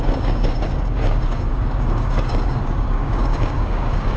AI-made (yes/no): yes